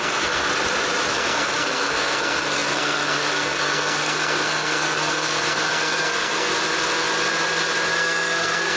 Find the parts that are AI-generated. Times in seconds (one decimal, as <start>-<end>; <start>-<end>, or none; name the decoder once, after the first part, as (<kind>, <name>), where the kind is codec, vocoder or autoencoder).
0.0-0.5 (codec, SNAC); 1.1-6.5; 7.9-8.8